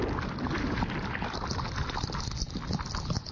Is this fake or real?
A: real